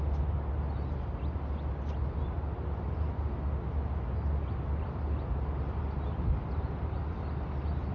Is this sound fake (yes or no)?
no